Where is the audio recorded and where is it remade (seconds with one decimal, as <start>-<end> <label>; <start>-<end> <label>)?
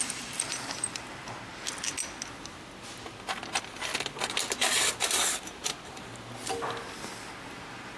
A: 0.0-1.5 remade; 1.5-5.3 recorded; 5.3-6.1 remade; 6.1-7.4 recorded; 7.4-8.0 remade